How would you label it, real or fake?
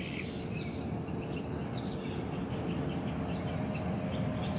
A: real